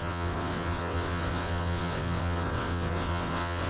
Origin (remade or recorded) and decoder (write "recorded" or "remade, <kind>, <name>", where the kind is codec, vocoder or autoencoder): remade, vocoder, WaveNeXt